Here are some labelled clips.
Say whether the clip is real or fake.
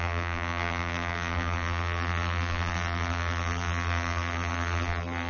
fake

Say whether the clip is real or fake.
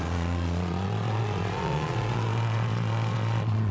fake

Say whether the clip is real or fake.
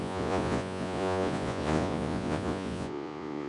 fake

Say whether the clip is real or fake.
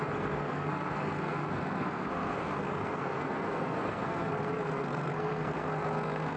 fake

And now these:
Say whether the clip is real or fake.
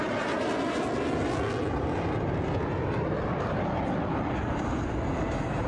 real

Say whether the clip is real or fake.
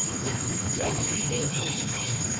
fake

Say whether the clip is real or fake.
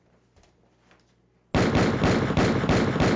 real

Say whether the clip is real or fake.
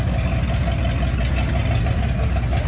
real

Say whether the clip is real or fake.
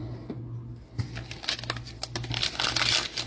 real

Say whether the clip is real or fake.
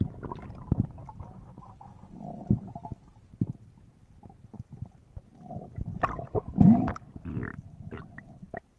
real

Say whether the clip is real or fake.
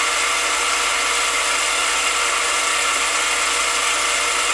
real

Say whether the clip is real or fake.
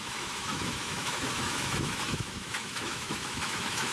fake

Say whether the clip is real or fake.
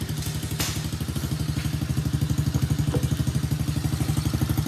real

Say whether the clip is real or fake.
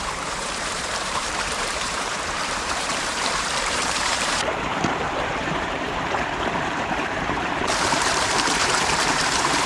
fake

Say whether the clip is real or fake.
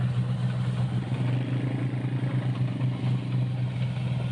real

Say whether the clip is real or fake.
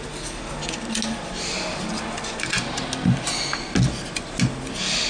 real